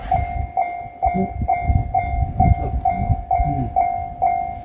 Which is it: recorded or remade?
recorded